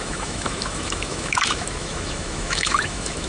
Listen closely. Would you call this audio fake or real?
fake